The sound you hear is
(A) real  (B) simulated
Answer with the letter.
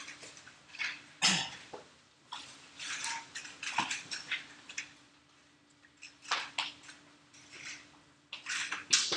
A